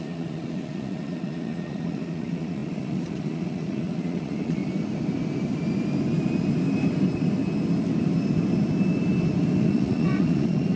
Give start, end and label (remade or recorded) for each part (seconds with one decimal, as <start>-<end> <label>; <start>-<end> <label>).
0.0-4.6 remade; 4.6-9.6 recorded; 9.6-10.8 remade